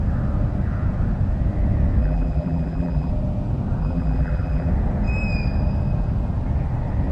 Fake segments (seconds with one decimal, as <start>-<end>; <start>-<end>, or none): 2.0-3.1; 3.8-4.7